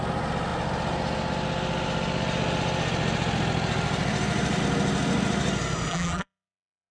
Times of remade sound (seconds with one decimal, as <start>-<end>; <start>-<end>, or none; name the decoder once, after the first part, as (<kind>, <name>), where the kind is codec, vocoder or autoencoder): 5.9-6.9 (vocoder, BigVGAN v2)